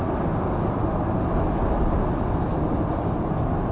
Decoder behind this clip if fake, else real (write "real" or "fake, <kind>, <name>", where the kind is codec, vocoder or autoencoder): real